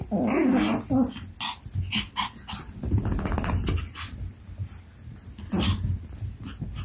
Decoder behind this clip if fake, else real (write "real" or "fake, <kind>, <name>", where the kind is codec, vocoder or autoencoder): real